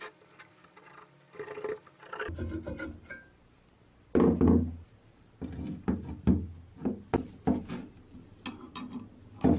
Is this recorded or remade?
recorded